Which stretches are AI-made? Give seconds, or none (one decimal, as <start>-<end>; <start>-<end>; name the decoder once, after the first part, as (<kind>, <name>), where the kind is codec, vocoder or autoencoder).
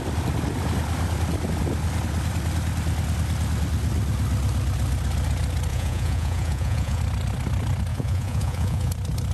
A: 5.7-7.0 (vocoder, Vocos); 7.9-8.9